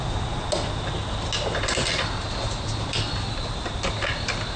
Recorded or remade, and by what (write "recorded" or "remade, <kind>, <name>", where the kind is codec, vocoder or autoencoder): recorded